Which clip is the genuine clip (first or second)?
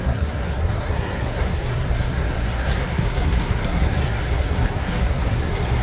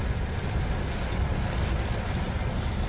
second